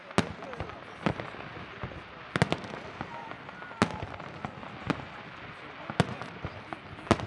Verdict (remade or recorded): recorded